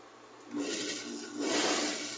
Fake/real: real